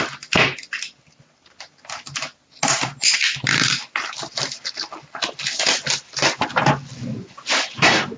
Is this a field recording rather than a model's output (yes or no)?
yes